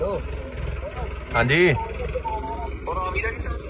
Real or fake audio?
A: real